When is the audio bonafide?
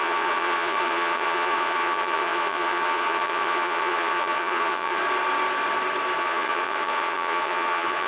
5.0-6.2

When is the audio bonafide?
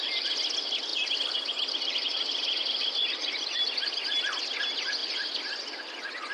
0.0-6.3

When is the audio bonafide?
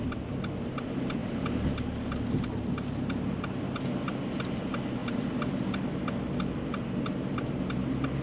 0.0-8.2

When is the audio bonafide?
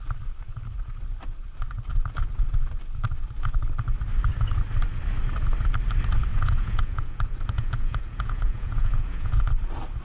0.0-6.3; 9.5-10.0